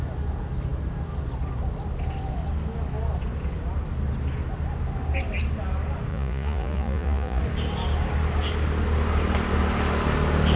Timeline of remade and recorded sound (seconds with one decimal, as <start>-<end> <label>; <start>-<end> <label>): 0.0-6.1 recorded; 6.1-7.4 remade; 7.4-10.6 recorded